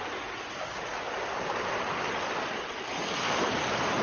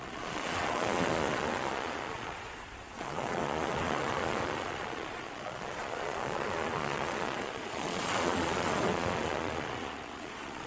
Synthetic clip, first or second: second